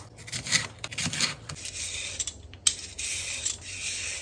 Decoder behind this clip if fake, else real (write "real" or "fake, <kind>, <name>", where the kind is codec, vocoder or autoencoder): real